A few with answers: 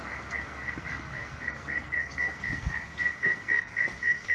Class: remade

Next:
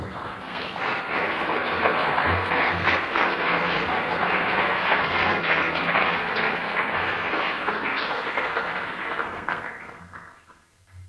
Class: remade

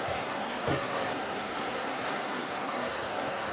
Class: remade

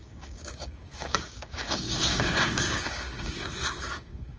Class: remade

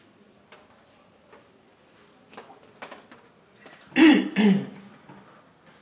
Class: recorded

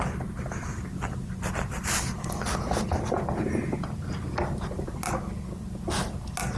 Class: recorded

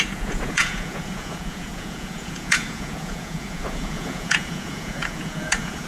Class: remade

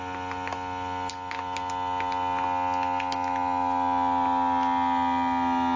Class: recorded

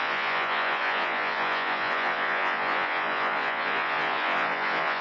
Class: remade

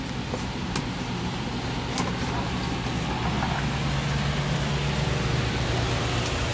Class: recorded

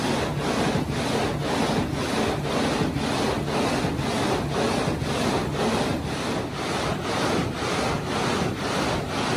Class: recorded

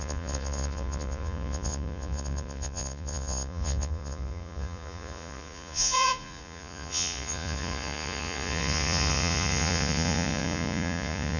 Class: remade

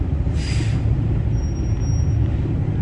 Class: recorded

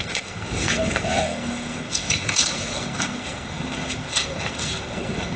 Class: remade